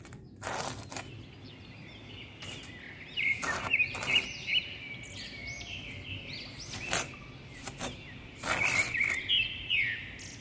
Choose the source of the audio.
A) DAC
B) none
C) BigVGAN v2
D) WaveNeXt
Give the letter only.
B